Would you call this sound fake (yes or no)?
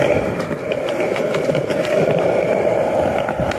no